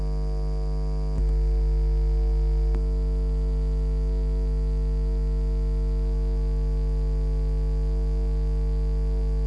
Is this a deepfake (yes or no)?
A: no